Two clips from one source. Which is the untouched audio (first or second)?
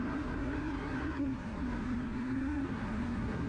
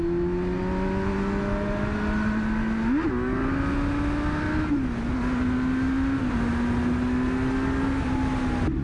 second